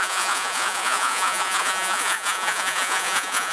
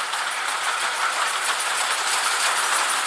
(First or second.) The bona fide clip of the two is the second